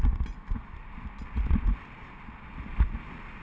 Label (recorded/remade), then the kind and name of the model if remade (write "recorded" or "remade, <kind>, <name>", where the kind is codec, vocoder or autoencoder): recorded